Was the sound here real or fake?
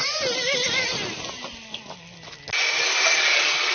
real